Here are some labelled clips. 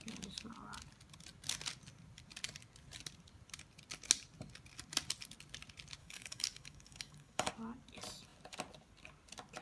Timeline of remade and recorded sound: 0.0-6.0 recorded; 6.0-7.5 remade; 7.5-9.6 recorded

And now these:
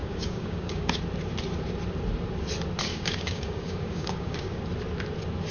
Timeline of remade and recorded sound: 0.0-1.0 remade; 1.0-2.9 recorded; 2.9-4.6 remade; 4.6-5.5 recorded